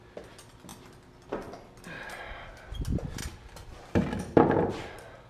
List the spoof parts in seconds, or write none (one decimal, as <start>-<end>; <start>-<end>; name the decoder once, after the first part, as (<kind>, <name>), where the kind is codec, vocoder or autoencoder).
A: none